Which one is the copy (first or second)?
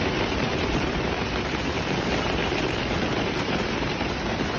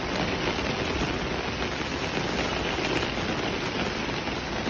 first